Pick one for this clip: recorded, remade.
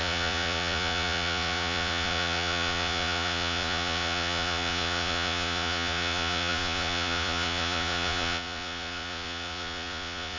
remade